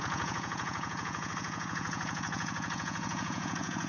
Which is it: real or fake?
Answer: fake